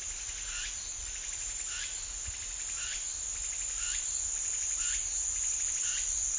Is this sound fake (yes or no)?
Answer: no